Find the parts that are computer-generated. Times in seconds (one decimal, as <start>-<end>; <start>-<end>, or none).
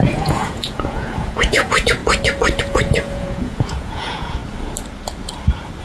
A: 0.0-2.0; 2.6-4.4